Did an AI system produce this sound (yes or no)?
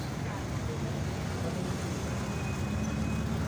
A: no